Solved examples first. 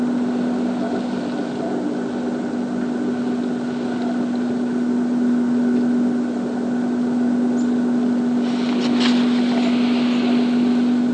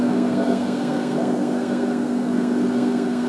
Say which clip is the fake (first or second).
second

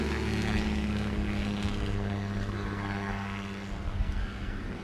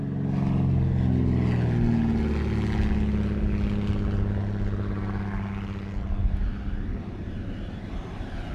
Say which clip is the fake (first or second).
first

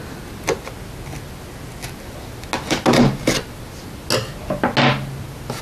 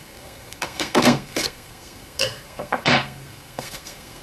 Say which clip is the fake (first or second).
second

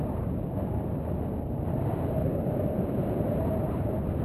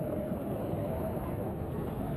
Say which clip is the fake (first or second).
second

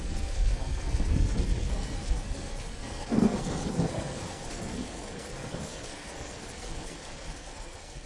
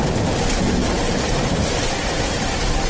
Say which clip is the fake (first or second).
first